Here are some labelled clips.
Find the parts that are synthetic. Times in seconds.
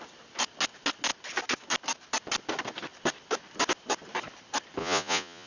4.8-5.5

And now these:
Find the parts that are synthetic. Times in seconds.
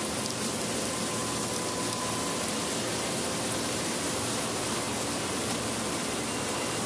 none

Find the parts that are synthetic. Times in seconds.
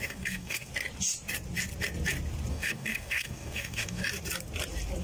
0.0-0.7; 2.5-4.0